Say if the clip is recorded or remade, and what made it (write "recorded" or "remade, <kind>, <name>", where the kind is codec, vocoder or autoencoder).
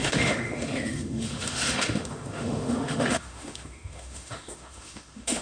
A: remade, autoencoder, DAC-VAE